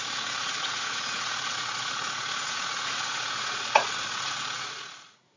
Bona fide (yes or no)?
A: no